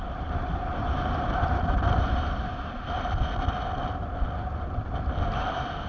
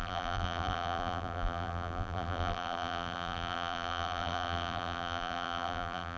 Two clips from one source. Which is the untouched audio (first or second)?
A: first